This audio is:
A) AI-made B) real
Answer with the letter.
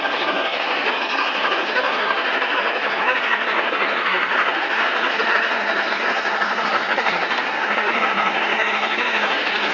A